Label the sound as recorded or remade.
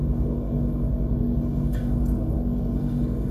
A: remade